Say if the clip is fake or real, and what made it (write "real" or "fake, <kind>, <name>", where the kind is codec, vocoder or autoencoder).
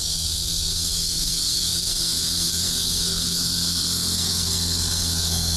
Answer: fake, codec, SNAC